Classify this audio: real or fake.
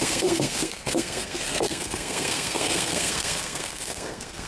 fake